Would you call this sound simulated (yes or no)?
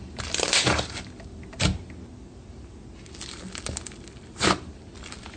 no